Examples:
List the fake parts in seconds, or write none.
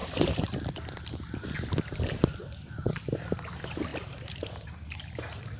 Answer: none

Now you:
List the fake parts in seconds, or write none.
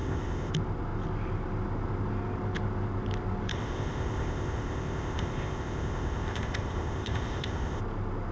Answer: 0.0-0.5 (codec, ZipCodec); 3.5-7.8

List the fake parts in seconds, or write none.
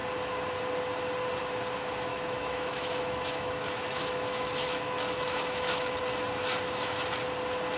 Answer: 2.1-6.0 (autoencoder, DAC-VAE)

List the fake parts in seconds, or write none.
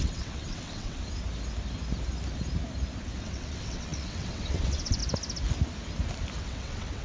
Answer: 0.0-1.0 (vocoder, WaveNeXt); 3.2-5.0; 6.4-7.0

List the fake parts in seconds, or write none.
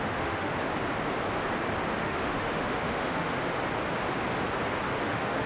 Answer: 0.0-0.5 (autoencoder, DAC-VAE); 2.0-3.4; 5.0-5.5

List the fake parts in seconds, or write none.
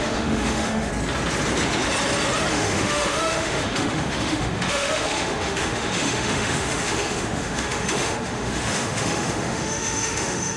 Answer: 0.0-0.9 (autoencoder, DAC-VAE); 2.5-10.6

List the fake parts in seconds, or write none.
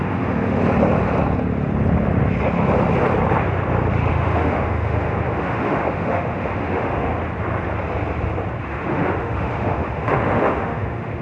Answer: 0.0-0.6 (autoencoder, DAC-VAE); 4.1-7.1; 8.6-11.2